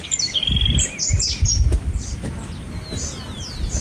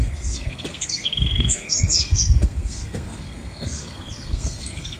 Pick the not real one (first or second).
second